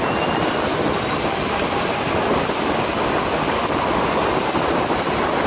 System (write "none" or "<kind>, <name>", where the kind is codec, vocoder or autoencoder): none